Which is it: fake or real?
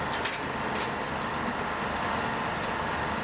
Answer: real